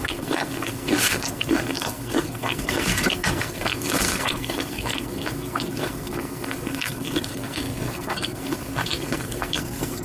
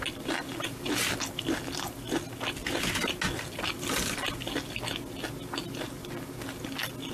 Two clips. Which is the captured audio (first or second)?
second